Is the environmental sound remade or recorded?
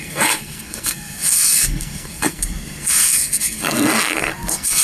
remade